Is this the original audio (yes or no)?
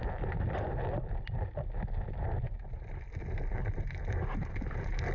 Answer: yes